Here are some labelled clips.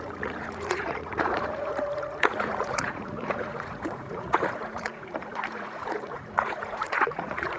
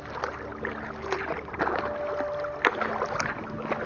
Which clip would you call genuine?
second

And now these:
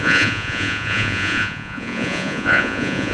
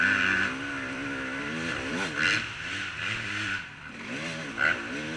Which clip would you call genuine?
second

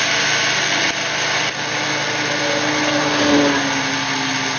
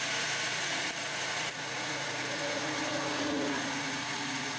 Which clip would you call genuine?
first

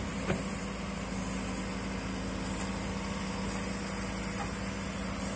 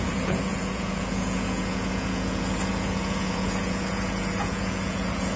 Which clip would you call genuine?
first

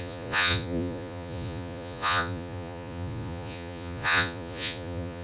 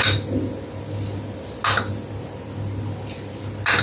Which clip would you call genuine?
second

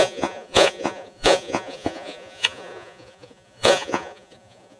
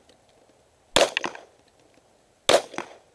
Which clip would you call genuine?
second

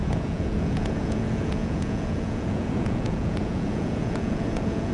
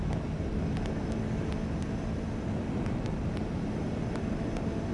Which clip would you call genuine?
second